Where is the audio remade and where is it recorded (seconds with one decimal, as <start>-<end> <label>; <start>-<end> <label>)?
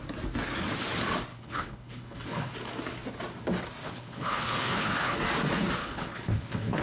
0.0-1.3 recorded; 1.3-2.5 remade; 2.5-3.8 recorded; 3.8-5.2 remade; 5.2-5.8 recorded; 5.8-6.8 remade